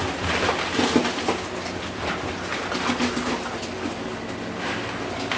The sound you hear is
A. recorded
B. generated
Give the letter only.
A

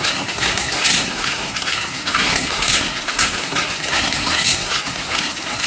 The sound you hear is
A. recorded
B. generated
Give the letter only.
B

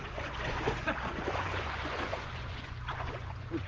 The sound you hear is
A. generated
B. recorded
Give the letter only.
A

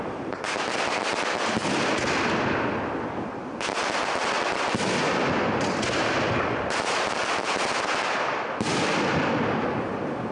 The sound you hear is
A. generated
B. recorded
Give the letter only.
B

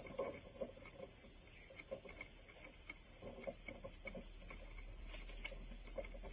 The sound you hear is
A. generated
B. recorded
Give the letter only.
B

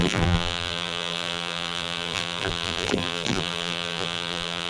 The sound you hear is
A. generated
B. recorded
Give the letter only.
A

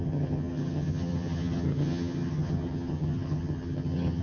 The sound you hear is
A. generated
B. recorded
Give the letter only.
A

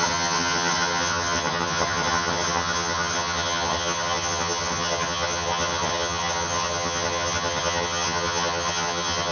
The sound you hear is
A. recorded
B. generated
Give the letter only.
B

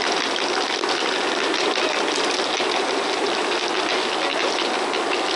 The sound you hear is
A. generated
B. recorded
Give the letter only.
B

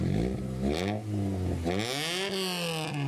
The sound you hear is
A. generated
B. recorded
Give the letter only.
B